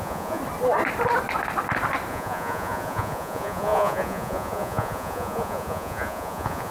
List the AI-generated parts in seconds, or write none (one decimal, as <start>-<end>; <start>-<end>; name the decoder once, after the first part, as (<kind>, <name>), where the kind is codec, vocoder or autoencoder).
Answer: 0.0-0.4 (vocoder, Vocos); 2.1-6.7